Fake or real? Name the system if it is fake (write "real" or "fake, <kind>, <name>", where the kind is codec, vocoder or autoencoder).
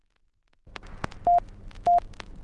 real